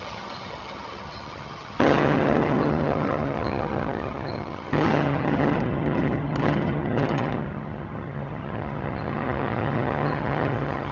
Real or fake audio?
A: fake